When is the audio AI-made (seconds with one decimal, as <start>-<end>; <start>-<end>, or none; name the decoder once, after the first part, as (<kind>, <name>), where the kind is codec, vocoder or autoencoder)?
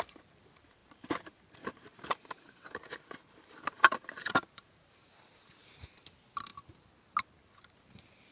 0.8-5.8 (vocoder, BigVGAN v2)